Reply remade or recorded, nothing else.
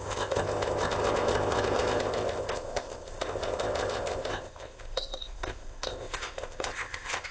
remade